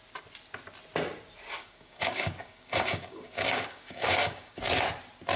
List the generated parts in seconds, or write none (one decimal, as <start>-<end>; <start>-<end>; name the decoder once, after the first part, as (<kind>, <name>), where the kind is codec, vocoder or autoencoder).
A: 1.6-4.6 (codec, DAC)